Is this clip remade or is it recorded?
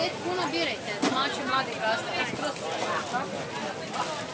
recorded